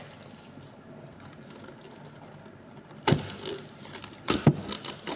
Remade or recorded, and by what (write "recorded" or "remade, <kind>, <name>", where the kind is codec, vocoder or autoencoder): recorded